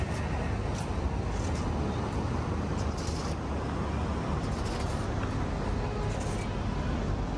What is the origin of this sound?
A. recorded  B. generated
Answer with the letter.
A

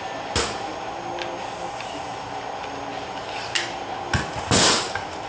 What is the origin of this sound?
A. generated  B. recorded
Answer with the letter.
B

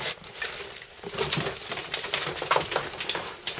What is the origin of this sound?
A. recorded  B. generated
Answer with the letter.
A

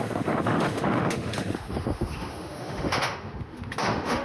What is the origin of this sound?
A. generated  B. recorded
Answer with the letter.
A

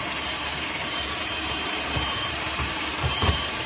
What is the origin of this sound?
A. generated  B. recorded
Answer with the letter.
A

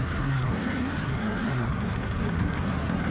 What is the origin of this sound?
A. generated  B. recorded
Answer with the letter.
A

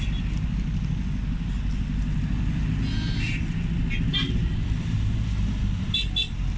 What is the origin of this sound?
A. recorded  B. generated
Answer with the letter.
A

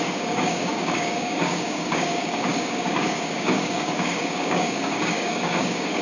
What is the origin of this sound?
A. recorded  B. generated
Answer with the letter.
B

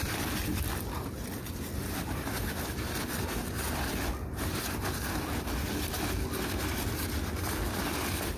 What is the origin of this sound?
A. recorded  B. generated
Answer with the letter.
A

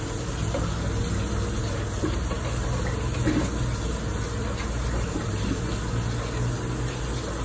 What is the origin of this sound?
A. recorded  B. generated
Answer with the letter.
A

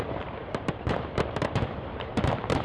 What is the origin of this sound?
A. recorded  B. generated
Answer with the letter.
B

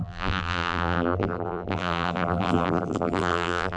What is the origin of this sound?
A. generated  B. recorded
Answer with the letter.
A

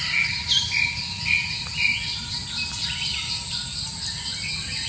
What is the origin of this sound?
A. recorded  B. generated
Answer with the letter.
A